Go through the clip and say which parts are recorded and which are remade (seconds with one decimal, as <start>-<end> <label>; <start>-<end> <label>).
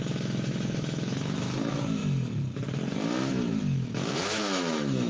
0.0-2.0 remade; 2.0-3.2 recorded; 3.2-5.1 remade